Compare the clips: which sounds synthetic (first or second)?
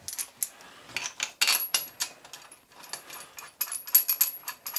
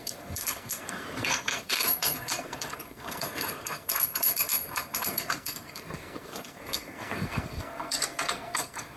second